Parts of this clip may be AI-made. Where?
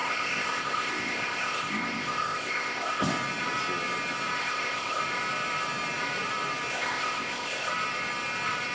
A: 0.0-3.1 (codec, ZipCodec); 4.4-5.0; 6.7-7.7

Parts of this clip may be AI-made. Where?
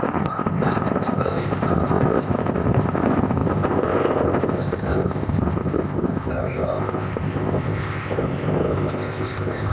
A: 0.0-9.7 (codec, ZipCodec)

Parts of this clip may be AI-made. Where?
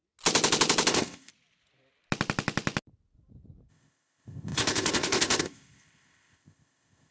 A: 0.9-1.3 (codec, ZipCodec); 3.7-7.1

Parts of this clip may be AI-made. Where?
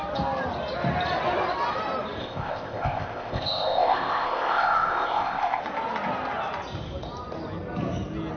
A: 2.2-5.6 (codec, ZipCodec)